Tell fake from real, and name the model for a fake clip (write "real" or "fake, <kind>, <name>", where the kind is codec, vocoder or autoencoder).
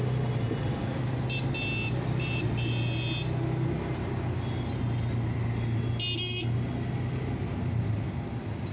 real